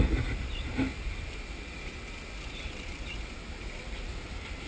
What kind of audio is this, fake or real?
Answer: real